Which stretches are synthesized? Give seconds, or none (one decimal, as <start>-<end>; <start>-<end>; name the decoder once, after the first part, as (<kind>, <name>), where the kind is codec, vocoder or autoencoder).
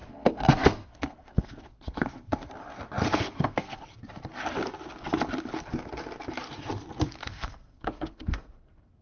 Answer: 0.0-2.5 (codec, SNAC); 3.1-3.8; 7.2-9.0